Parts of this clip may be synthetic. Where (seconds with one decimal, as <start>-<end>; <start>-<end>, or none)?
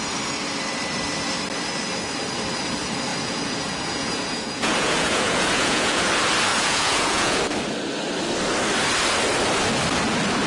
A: 3.1-6.0; 6.5-7.4